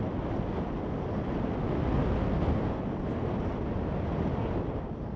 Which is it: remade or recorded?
recorded